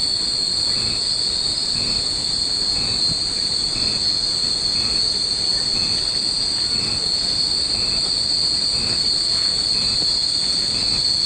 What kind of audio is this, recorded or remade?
recorded